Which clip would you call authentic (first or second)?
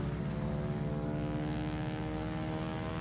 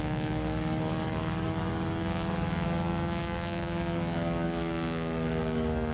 first